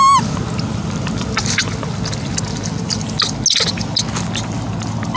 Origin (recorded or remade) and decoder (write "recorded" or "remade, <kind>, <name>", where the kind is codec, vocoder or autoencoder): recorded